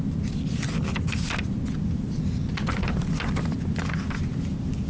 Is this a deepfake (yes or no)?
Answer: no